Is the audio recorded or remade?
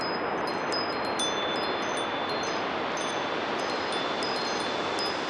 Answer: recorded